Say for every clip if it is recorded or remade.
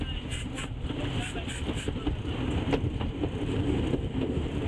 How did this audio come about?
recorded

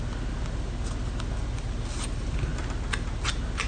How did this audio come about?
recorded